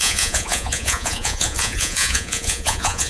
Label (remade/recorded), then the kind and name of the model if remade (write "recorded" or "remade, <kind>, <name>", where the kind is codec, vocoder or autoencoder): remade, vocoder, Vocos